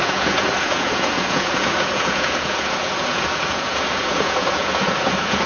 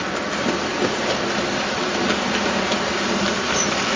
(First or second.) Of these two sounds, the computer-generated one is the first